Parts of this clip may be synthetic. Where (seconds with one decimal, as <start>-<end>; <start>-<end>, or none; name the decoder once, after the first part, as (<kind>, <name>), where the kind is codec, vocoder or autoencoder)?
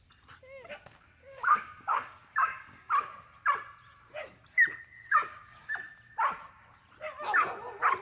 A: 1.2-2.9 (codec, DAC); 5.1-5.7